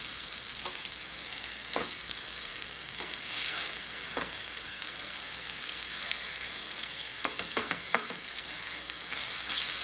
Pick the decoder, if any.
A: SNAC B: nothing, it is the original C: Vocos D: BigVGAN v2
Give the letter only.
A